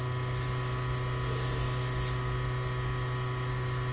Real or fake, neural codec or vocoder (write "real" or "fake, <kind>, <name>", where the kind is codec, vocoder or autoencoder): real